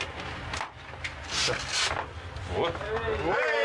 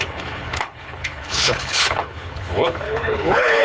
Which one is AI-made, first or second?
second